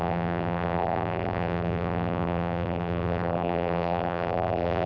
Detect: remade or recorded remade